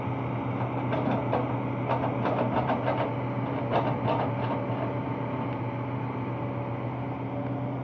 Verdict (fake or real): real